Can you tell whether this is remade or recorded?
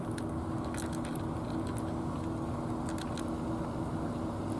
recorded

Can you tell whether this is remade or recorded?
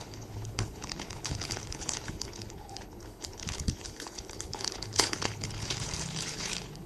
remade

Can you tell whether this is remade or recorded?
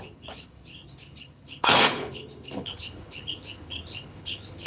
remade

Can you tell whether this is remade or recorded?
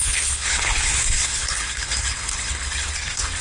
remade